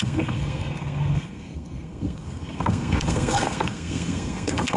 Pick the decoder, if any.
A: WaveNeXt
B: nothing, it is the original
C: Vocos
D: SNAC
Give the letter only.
D